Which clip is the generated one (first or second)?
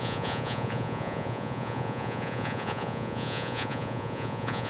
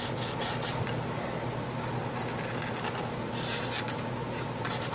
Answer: first